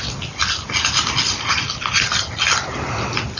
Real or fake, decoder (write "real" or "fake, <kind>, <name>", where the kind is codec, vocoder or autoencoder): real